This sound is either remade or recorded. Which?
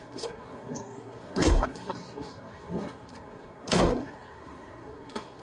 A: remade